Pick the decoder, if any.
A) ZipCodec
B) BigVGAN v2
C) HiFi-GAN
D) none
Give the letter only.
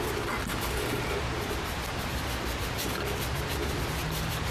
D